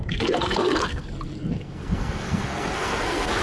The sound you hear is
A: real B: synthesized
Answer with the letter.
B